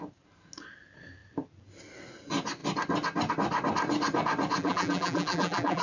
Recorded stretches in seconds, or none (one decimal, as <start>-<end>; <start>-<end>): 0.0-4.6